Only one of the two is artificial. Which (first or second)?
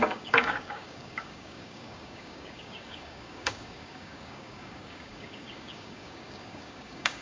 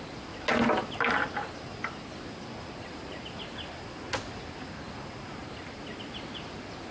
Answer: first